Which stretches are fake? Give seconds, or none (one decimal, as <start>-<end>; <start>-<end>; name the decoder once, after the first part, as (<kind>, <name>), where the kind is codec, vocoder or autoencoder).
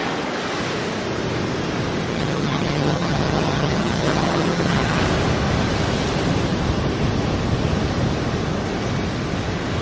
2.1-5.0 (vocoder, HiFi-GAN)